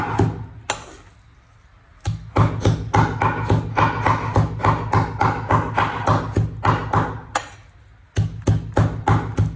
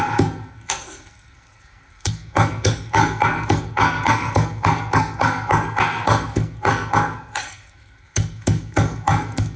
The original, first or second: first